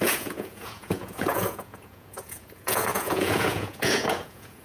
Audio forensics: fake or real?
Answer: fake